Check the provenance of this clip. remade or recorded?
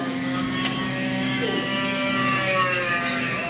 remade